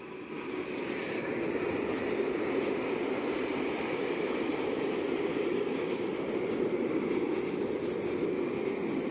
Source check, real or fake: real